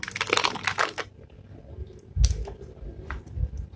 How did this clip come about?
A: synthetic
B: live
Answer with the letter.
B